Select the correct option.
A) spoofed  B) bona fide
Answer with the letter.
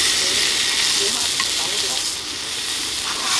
B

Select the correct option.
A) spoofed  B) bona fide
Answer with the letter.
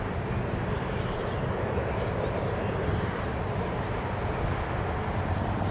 B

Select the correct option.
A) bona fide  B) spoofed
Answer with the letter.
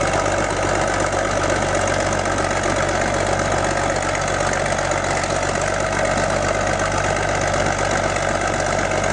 A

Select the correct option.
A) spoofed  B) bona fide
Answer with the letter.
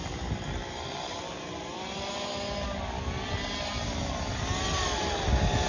B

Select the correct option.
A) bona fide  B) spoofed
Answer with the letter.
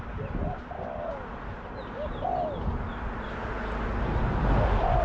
A